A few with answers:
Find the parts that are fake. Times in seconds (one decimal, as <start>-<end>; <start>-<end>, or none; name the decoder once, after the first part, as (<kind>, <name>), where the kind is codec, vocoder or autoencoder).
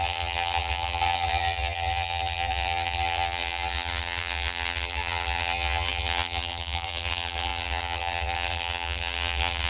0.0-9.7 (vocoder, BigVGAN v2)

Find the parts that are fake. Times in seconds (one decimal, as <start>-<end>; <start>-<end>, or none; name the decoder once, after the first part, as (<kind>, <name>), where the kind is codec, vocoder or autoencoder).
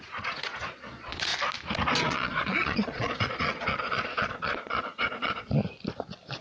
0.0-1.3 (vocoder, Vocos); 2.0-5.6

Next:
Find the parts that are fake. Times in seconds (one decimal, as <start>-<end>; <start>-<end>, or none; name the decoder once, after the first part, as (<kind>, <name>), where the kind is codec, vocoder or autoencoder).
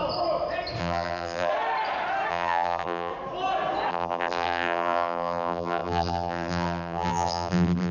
0.8-1.5 (vocoder, BigVGAN v2); 2.3-3.1; 3.9-7.9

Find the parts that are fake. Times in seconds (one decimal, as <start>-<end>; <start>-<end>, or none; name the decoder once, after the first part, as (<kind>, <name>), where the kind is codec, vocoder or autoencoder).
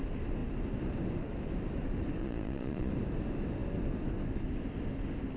2.2-2.9 (vocoder, Vocos)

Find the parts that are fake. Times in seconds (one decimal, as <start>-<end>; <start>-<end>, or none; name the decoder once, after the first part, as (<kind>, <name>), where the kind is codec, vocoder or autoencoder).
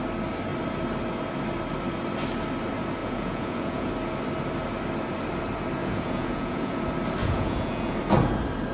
3.0-3.9 (vocoder, Vocos); 5.8-6.8; 7.2-8.0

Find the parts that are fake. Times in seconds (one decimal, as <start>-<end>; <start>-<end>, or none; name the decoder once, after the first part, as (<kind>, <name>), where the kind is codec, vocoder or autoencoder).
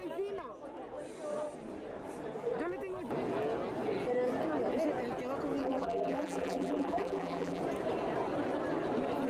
5.6-7.6 (vocoder, BigVGAN v2)